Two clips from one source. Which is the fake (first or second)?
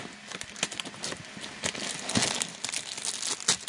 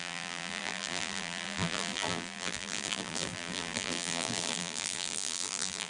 second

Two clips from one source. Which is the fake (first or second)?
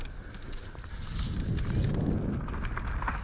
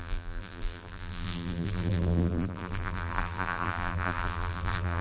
second